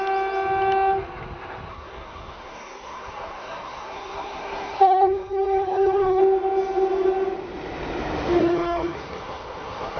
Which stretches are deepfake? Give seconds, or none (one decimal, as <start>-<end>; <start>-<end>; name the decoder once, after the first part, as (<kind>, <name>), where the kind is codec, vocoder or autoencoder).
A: 1.7-6.2 (codec, SNAC); 8.4-10.0

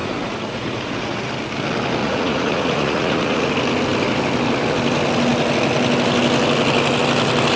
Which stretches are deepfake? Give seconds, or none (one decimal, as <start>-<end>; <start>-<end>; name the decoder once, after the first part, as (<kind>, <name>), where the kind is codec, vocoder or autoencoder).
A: 0.0-1.3 (vocoder, Vocos); 2.0-3.5

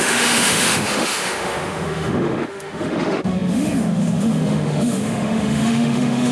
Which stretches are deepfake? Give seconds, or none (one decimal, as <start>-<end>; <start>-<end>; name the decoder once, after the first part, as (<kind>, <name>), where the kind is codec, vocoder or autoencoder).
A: 0.0-6.3 (autoencoder, DAC-VAE)

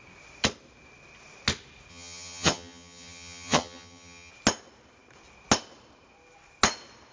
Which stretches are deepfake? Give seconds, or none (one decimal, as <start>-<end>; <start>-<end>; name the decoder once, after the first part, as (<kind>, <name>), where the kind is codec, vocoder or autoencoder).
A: 1.9-4.3 (vocoder, HiFi-GAN)

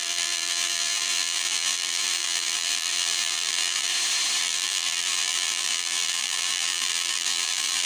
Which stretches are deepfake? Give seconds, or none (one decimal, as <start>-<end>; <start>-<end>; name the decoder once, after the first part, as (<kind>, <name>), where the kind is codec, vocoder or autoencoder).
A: 0.0-3.9 (vocoder, BigVGAN v2); 4.4-7.9

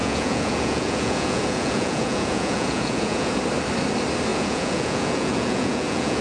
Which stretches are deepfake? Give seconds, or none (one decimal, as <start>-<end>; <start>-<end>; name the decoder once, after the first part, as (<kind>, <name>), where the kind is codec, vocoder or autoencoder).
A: 0.0-3.4 (vocoder, Vocos); 4.3-6.2

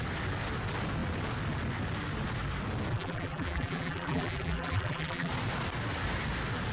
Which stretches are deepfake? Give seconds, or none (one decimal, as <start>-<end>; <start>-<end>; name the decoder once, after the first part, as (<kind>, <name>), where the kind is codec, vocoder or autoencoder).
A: 2.9-5.3 (vocoder, BigVGAN v2)